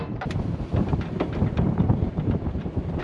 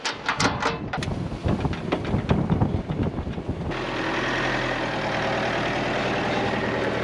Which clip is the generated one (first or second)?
first